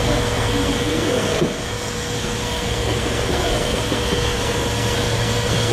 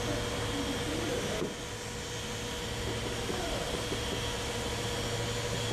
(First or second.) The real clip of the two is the second